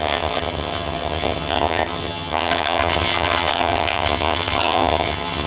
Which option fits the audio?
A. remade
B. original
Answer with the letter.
A